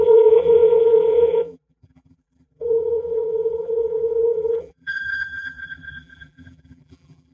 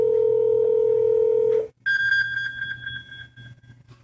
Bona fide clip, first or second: second